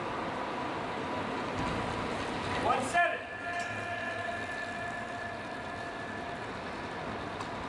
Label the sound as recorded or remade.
recorded